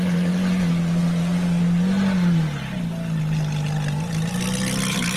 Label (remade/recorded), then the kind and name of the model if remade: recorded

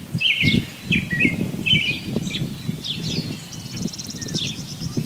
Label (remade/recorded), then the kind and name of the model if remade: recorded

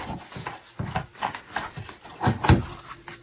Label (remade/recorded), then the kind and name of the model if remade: remade, vocoder, BigVGAN v2